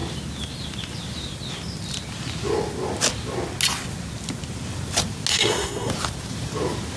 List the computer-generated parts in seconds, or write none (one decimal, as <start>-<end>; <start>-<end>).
5.3-5.9